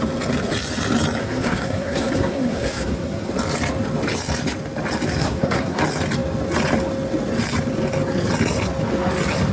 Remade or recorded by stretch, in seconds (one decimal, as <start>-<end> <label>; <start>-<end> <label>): 0.0-1.2 recorded; 1.2-3.3 remade; 3.3-5.2 recorded; 5.2-5.8 remade; 5.8-9.5 recorded